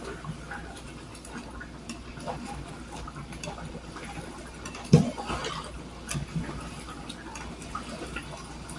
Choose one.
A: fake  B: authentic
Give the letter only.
B